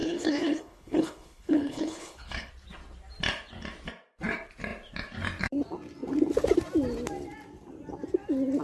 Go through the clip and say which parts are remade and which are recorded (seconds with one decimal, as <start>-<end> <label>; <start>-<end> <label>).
0.0-2.5 remade; 2.5-8.6 recorded